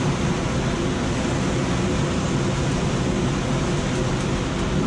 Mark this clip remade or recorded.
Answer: recorded